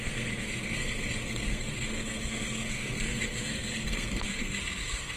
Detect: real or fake fake